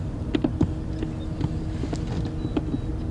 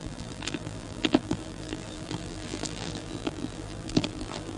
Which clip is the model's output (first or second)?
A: second